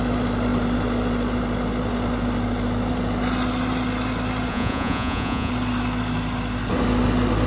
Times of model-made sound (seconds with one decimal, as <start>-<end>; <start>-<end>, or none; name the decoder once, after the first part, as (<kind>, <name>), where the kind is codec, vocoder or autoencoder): 4.5-5.5 (vocoder, Vocos)